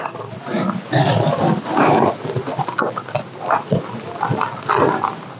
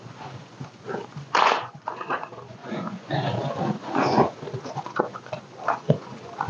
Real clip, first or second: first